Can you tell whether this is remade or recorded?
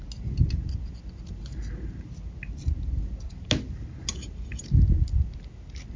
recorded